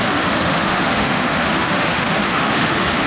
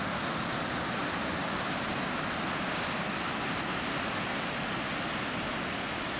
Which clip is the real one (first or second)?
second